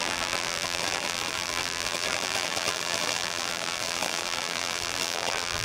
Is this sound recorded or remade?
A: remade